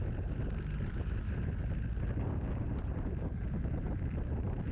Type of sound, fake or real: real